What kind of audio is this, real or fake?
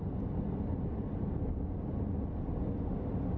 real